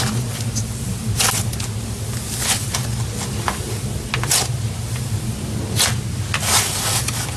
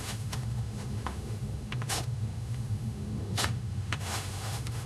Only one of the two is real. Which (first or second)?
first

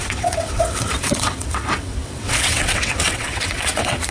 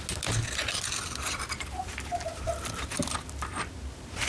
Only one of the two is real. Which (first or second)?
second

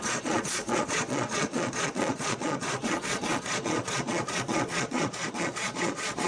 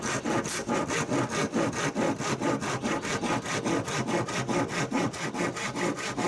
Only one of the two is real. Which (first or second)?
second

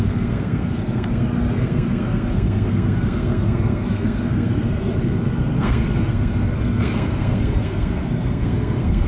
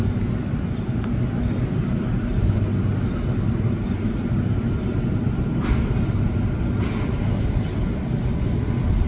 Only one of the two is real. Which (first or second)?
second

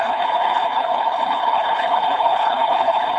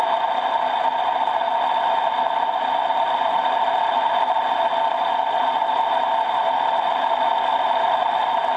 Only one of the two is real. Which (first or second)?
second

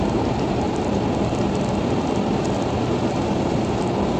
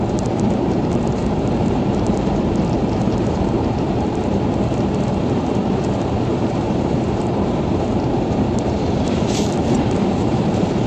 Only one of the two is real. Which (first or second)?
first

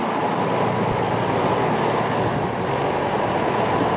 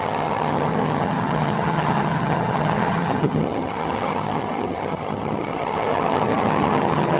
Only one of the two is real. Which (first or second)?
first